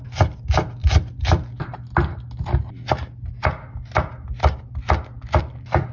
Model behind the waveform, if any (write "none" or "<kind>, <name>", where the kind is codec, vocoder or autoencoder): none